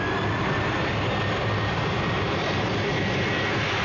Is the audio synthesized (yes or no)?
no